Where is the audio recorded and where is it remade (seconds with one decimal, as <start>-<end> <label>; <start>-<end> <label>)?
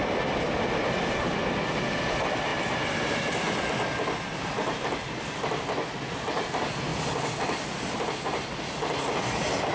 0.0-9.7 recorded